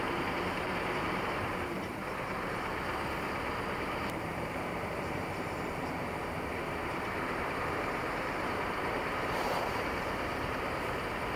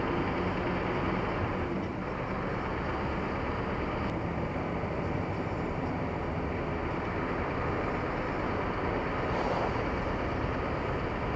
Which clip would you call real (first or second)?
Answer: second